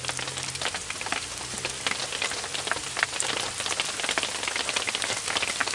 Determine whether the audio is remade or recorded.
recorded